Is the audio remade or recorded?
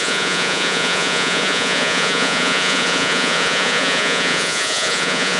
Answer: remade